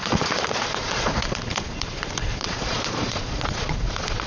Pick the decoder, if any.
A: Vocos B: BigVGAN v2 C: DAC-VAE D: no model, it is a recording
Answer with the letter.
A